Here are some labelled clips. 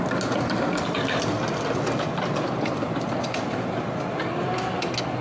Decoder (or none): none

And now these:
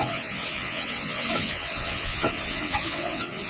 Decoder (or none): vocoder, WaveNeXt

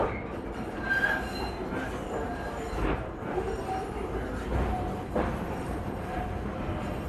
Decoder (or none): vocoder, BigVGAN v2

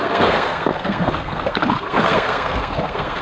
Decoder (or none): codec, SNAC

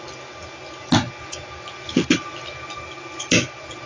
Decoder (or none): none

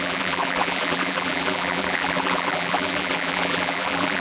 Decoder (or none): vocoder, BigVGAN v2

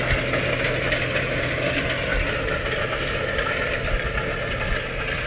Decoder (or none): none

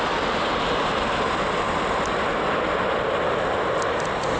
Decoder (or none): none